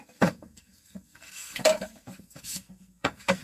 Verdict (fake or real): fake